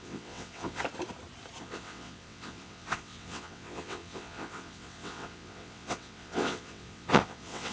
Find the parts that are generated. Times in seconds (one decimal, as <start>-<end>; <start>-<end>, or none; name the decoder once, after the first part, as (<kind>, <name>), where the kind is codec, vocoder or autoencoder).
0.0-0.8 (vocoder, WaveNeXt); 1.6-7.7